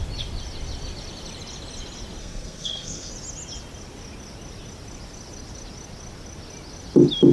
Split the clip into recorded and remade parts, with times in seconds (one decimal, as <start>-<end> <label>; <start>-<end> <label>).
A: 0.0-2.2 recorded; 2.2-3.1 remade; 3.1-7.3 recorded